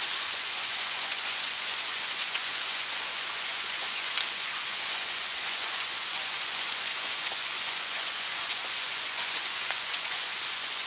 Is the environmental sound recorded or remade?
remade